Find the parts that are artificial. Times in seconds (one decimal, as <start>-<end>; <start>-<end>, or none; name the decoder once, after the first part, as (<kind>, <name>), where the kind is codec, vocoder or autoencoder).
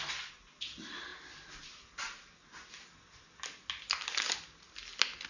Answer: none